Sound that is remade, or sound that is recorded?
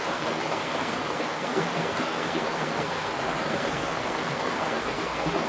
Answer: remade